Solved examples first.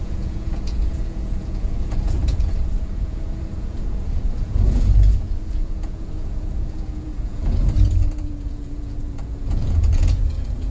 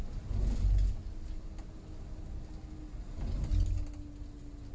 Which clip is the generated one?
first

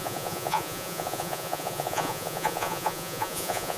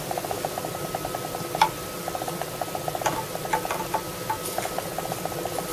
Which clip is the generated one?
first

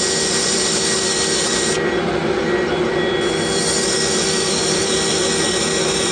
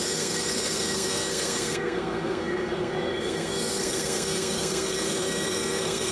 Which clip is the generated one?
second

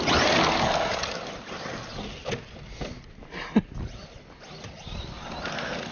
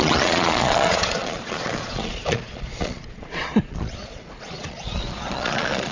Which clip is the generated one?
second